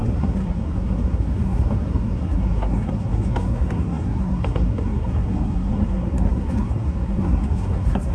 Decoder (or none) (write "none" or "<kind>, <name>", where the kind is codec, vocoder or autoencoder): codec, SNAC